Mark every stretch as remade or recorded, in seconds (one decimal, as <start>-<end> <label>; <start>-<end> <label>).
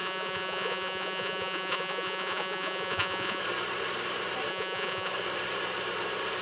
0.0-3.4 remade; 3.4-4.5 recorded; 4.5-5.1 remade; 5.1-6.4 recorded